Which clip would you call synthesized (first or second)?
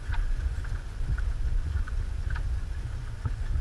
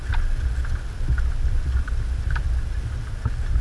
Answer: first